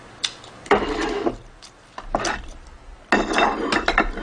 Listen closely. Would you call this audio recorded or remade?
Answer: recorded